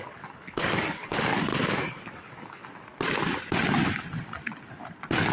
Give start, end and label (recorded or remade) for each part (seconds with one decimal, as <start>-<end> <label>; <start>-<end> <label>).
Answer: 0.0-2.6 remade; 2.6-5.3 recorded